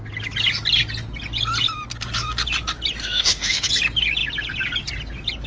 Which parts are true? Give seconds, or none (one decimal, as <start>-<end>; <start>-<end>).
0.0-3.0; 3.7-5.5